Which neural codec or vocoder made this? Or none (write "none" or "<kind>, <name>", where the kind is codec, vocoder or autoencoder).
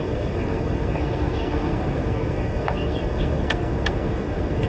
codec, SNAC